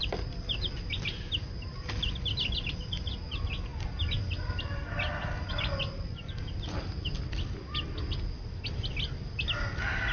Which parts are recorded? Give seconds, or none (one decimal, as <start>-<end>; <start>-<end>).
0.0-10.1